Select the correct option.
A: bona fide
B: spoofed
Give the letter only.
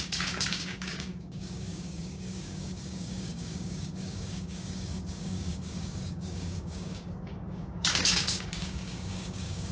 B